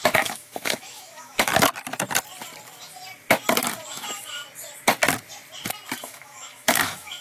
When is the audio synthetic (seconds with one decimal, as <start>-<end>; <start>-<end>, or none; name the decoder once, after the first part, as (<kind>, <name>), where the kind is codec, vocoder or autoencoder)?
0.0-1.5 (autoencoder, DAC-VAE); 3.9-4.4; 6.0-7.2